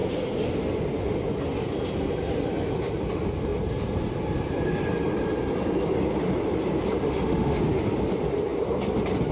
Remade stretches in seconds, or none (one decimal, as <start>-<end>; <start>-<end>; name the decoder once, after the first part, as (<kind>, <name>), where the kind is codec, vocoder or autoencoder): 7.0-7.6 (autoencoder, DAC-VAE)